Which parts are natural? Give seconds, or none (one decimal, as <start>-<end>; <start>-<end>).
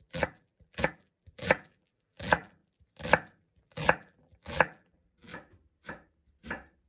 2.6-3.4; 5.3-6.9